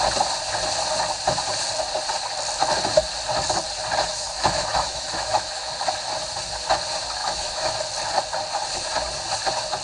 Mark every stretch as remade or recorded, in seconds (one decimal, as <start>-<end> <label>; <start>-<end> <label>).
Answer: 0.0-4.1 recorded; 4.1-5.7 remade; 5.7-7.2 recorded; 7.2-7.7 remade; 7.7-9.8 recorded